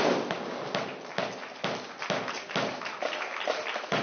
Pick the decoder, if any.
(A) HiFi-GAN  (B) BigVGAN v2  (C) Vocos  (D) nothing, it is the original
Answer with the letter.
D